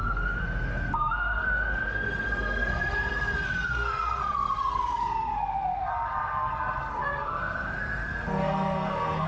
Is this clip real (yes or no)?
no